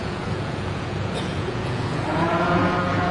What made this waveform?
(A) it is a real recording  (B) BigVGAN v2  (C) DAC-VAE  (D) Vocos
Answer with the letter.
D